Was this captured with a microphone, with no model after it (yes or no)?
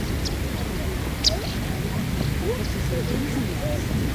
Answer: yes